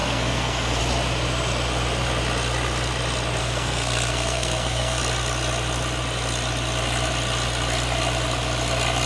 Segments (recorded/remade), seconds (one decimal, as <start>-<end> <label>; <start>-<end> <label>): 0.0-0.8 remade; 0.8-3.4 recorded; 3.4-5.0 remade; 5.0-9.1 recorded